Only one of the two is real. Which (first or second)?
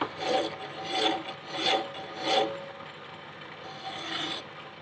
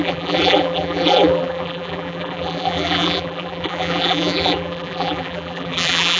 first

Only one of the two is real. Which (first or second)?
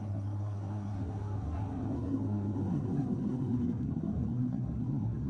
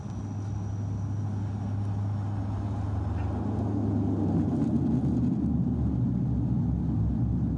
second